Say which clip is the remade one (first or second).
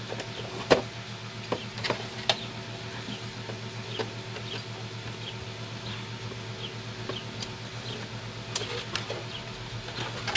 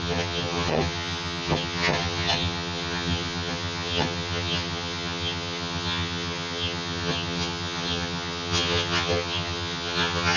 second